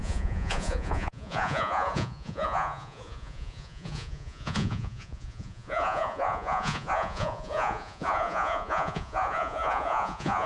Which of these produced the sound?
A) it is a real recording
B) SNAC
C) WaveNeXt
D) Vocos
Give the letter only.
D